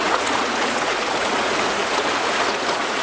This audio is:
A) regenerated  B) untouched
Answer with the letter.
A